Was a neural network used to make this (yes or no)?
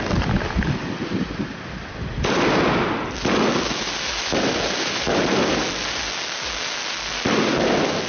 no